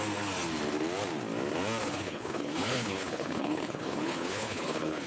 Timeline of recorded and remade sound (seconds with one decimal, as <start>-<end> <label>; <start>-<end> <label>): 0.0-1.8 recorded; 1.8-5.1 remade